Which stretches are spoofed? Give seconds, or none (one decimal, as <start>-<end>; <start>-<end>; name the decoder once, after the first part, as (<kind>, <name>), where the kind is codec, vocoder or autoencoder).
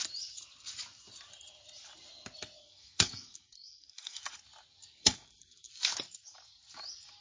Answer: 2.6-4.2 (codec, SNAC); 5.0-5.7